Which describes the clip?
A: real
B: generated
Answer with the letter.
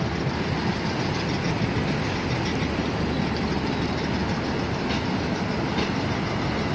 A